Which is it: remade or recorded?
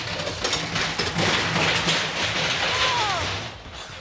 recorded